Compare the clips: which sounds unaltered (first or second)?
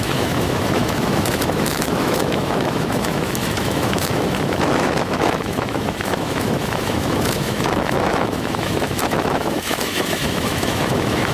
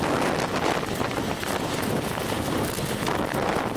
second